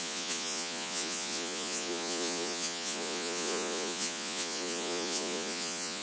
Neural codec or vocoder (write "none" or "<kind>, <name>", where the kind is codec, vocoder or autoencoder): vocoder, Vocos